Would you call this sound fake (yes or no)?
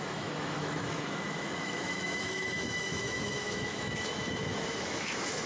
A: yes